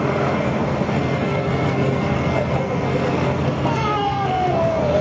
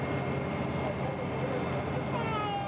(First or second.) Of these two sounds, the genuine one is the second